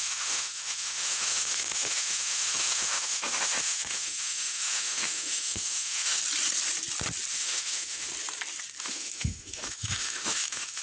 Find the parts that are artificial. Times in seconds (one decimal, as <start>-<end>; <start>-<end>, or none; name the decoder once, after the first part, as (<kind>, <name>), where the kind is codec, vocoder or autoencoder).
0.0-6.2 (autoencoder, DAC-VAE); 7.3-8.1; 8.8-10.8